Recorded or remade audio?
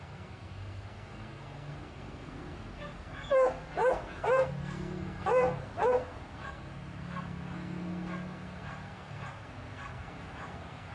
remade